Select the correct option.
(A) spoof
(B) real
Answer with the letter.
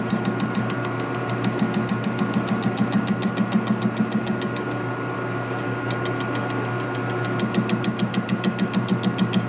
B